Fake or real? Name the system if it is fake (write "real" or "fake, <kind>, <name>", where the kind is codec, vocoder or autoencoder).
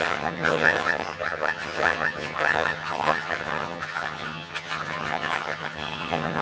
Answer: fake, vocoder, HiFi-GAN